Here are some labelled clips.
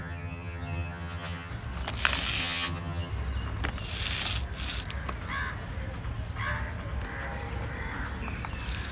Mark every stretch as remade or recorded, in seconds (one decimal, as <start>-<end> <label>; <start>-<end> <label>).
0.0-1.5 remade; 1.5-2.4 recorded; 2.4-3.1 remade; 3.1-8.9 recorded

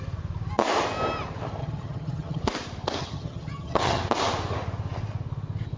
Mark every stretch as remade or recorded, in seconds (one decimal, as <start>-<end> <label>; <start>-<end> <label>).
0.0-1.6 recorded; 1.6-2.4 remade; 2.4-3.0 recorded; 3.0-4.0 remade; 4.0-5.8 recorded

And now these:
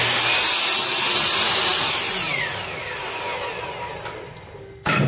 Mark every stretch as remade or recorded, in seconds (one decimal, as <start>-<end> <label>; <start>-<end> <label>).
0.0-5.1 recorded